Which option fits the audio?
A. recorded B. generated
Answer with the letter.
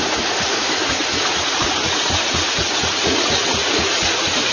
B